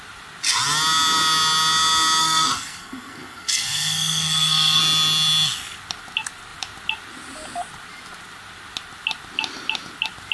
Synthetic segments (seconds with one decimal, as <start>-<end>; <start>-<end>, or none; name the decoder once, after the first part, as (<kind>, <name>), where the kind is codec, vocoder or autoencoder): 2.2-4.8 (codec, SNAC)